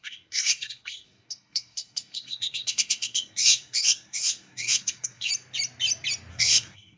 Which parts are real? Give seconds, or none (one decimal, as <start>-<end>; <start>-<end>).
5.3-6.3